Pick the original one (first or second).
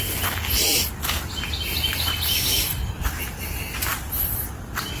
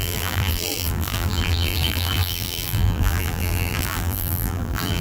first